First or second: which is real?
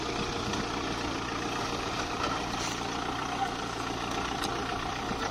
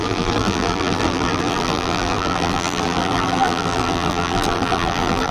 first